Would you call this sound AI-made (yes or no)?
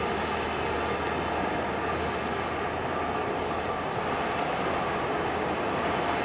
no